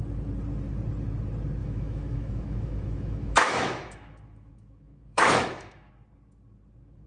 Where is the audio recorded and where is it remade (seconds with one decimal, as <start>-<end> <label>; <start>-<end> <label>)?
0.0-1.6 recorded; 1.6-5.9 remade; 5.9-7.1 recorded